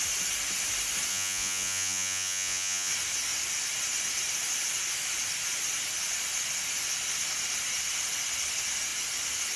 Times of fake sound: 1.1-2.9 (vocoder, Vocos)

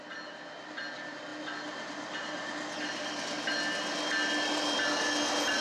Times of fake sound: none

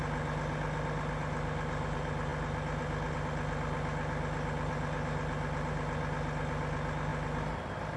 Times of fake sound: none

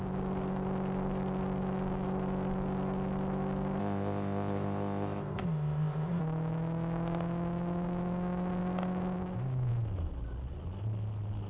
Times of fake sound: 3.8-6.2 (codec, ZipCodec)

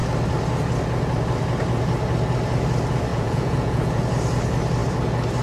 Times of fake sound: 3.1-4.0 (vocoder, Vocos)

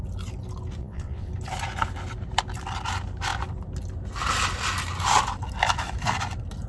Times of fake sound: 0.8-1.3 (vocoder, WaveNeXt)

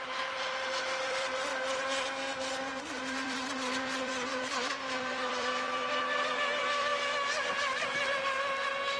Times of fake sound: 0.0-1.5 (vocoder, BigVGAN v2); 2.8-6.9

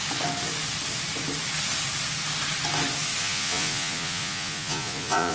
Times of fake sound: 3.2-5.3 (vocoder, Vocos)